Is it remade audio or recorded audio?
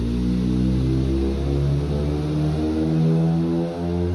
recorded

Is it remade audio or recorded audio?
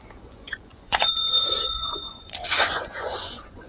remade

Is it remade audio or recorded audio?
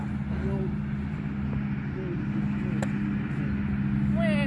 recorded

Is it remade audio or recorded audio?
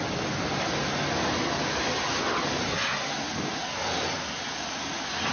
recorded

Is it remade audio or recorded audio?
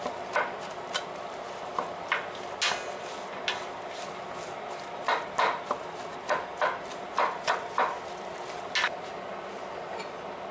recorded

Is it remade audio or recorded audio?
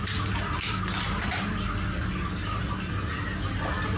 recorded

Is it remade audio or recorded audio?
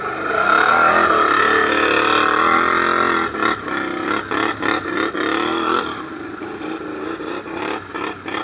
recorded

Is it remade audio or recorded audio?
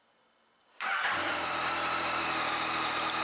recorded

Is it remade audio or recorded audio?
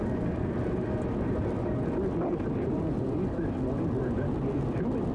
recorded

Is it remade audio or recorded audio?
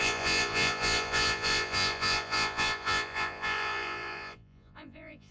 remade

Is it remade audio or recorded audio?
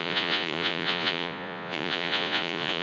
remade